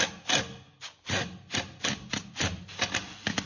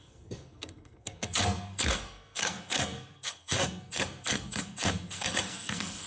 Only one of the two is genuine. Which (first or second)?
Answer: first